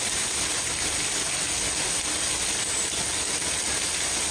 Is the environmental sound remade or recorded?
recorded